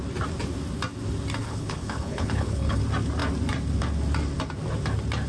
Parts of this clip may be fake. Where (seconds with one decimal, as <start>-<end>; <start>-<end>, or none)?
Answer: 1.4-2.8